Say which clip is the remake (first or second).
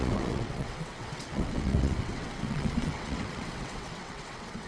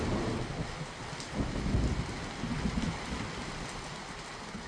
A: first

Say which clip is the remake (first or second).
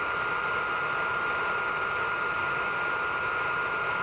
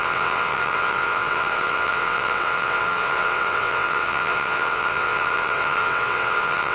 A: second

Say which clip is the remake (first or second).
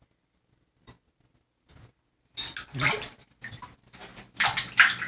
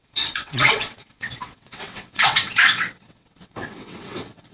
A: second